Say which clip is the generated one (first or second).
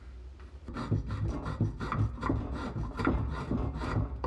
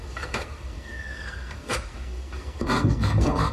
second